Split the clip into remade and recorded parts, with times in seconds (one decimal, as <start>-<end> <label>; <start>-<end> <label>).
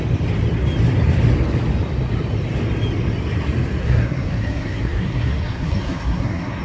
0.0-3.8 recorded; 3.8-6.6 remade